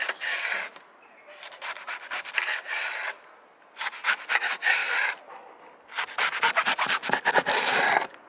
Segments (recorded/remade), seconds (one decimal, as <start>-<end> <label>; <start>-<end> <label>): 0.0-8.3 recorded